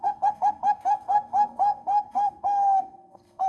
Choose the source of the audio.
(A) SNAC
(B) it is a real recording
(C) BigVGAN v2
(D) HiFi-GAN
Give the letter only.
A